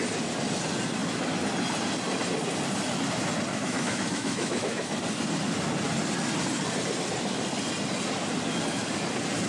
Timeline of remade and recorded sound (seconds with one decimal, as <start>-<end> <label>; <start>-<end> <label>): 0.0-3.5 recorded; 3.5-5.0 remade; 5.0-9.5 recorded